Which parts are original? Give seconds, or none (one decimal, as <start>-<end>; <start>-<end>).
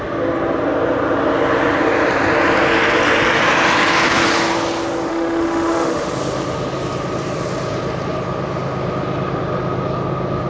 0.0-5.1; 6.1-10.5